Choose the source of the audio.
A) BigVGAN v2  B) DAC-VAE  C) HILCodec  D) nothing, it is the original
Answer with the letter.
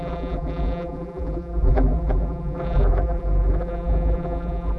A